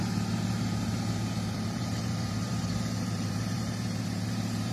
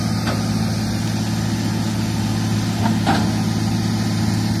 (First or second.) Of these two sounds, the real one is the second